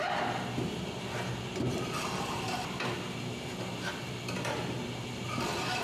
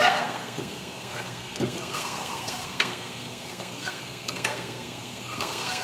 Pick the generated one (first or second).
second